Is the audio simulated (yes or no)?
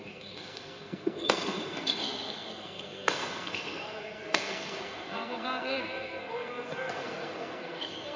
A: yes